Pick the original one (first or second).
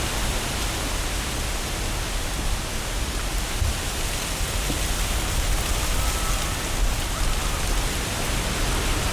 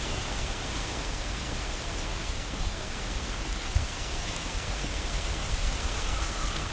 first